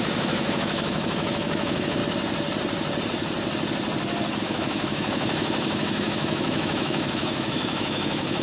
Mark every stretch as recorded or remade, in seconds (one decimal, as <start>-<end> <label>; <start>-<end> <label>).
0.0-2.0 remade; 2.0-4.4 recorded; 4.4-8.4 remade